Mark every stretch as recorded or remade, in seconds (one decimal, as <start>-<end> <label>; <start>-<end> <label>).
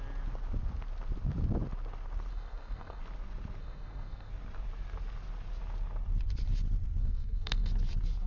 0.0-2.3 recorded; 2.3-3.0 remade; 3.0-3.6 recorded; 3.6-4.3 remade; 4.3-7.0 recorded; 7.0-7.7 remade; 7.7-8.3 recorded